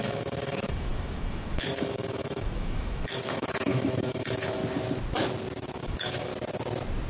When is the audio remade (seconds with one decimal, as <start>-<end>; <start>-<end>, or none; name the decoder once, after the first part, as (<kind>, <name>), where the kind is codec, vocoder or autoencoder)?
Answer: 0.0-4.6 (autoencoder, DAC-VAE); 5.8-6.3